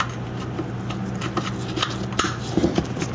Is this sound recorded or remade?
recorded